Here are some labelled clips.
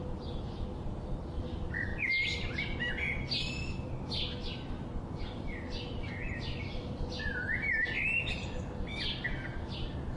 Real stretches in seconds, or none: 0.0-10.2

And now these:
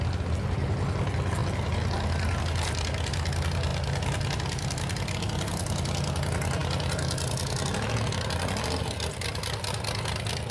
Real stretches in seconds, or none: 0.0-10.5